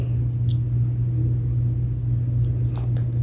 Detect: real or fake real